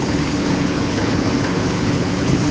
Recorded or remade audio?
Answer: remade